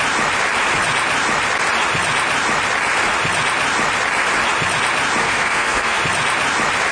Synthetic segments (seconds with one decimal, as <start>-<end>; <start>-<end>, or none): 5.2-6.0